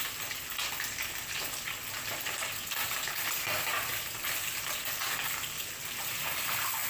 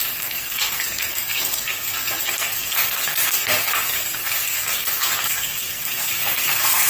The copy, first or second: second